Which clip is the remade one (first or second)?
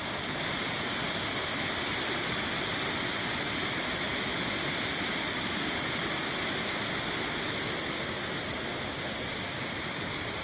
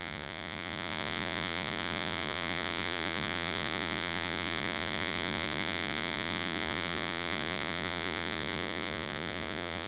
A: second